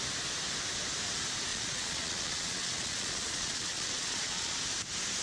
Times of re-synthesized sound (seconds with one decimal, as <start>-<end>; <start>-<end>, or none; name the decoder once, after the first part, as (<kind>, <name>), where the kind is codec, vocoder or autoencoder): 1.5-4.6 (vocoder, Vocos)